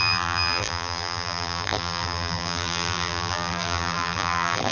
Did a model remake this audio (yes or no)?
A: yes